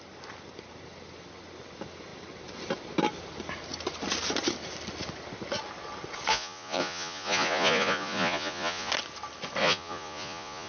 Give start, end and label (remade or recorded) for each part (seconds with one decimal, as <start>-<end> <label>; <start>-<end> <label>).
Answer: 0.0-6.3 recorded; 6.3-8.9 remade; 8.9-9.6 recorded; 9.6-10.7 remade